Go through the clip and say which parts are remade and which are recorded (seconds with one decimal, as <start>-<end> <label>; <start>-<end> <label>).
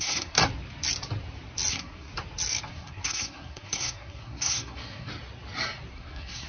0.0-0.4 remade; 0.4-1.7 recorded; 1.7-2.1 remade; 2.1-2.7 recorded; 2.7-5.1 remade; 5.1-5.9 recorded; 5.9-6.5 remade